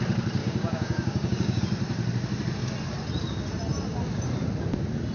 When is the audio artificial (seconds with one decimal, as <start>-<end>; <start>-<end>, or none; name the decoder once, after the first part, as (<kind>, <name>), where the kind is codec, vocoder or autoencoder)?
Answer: 0.4-1.6 (codec, DAC)